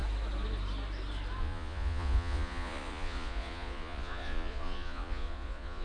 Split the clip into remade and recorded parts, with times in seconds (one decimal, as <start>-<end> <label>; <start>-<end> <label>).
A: 0.0-1.4 recorded; 1.4-5.8 remade